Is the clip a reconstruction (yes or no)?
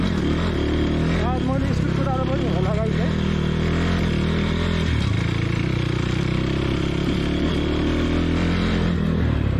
no